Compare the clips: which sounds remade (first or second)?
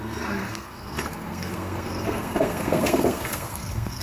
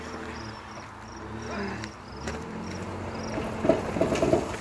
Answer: first